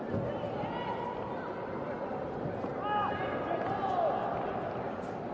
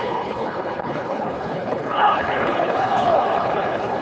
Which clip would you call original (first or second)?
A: first